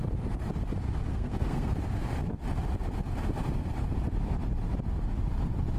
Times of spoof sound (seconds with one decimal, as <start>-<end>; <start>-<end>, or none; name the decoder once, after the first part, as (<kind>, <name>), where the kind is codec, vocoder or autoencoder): 1.1-1.7 (codec, SNAC)